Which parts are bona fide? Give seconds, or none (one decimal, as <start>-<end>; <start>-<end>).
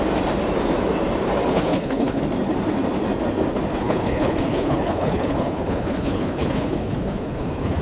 0.0-1.5; 2.2-3.7